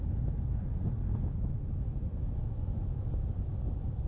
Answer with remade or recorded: recorded